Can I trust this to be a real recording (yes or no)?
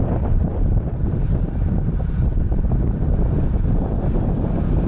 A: yes